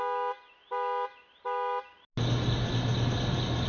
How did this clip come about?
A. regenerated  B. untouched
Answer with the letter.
B